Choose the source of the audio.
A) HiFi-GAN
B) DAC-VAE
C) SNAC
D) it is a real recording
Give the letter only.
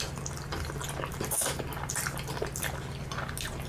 D